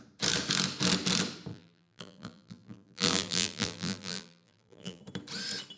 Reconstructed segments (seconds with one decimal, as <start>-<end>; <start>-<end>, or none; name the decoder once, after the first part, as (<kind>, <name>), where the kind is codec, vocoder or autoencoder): 1.5-5.0 (vocoder, BigVGAN v2)